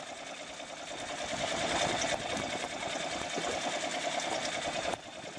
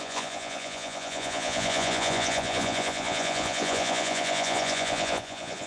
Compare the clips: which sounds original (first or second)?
first